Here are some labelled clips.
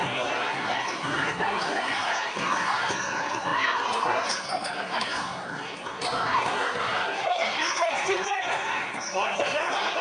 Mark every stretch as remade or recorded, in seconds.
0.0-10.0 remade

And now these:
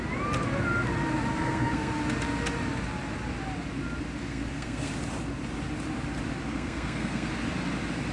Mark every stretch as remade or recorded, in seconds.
0.0-1.3 recorded; 1.3-1.9 remade; 1.9-4.2 recorded; 4.2-4.9 remade; 4.9-6.5 recorded; 6.5-7.3 remade; 7.3-8.1 recorded

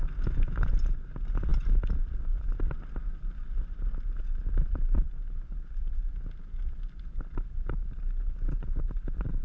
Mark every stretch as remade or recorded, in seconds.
0.0-9.4 recorded